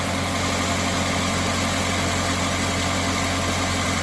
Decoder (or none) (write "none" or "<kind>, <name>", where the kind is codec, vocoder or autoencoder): none